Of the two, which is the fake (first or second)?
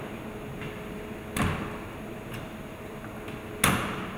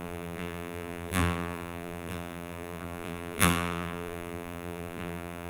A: second